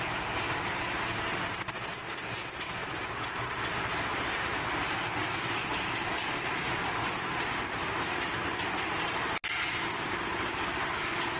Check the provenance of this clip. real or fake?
real